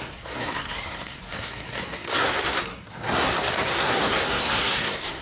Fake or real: fake